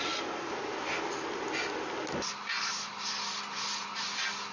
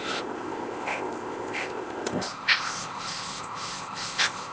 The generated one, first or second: second